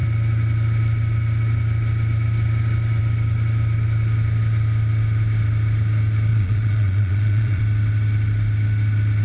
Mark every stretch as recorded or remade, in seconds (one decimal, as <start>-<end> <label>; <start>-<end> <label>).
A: 0.0-6.3 recorded; 6.3-7.6 remade; 7.6-9.2 recorded